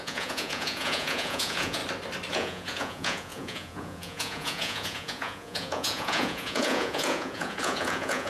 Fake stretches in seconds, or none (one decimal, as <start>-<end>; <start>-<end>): 0.0-1.8; 2.3-8.3